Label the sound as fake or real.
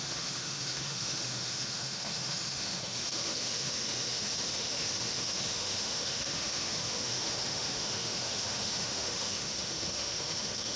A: fake